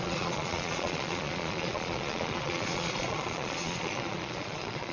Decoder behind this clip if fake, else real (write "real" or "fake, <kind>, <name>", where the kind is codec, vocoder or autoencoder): fake, vocoder, Vocos